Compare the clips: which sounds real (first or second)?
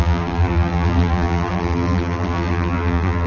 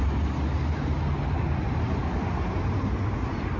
second